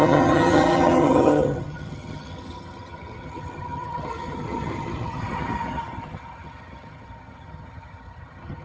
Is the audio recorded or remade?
remade